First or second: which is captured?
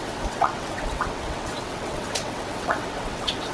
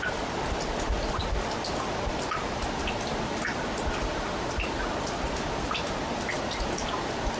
second